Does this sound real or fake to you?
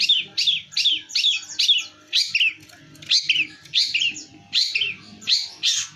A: real